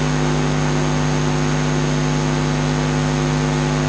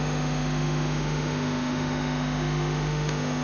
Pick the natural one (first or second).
first